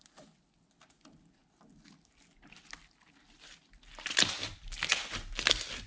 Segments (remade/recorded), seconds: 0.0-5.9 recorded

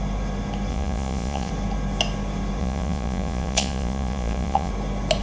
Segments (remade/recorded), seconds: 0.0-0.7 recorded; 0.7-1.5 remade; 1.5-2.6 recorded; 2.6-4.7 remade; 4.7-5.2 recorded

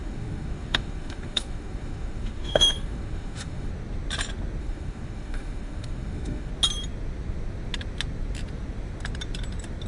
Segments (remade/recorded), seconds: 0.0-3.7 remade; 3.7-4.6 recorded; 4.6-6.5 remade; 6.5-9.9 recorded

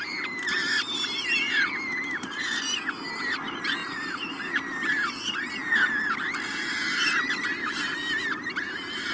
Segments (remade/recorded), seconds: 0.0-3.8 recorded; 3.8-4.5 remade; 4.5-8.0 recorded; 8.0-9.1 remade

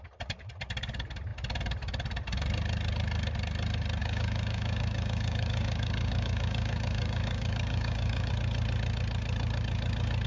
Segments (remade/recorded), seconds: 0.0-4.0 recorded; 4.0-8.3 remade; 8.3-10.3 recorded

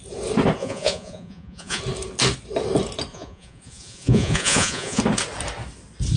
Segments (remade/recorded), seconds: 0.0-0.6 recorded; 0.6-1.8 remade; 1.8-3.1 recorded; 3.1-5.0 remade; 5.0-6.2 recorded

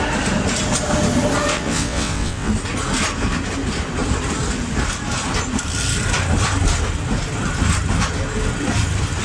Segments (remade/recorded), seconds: 0.0-1.5 recorded; 1.5-2.5 remade; 2.5-9.2 recorded

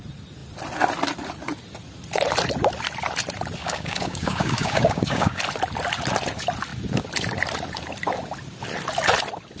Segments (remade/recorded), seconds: 0.0-3.6 recorded; 3.6-5.4 remade; 5.4-9.6 recorded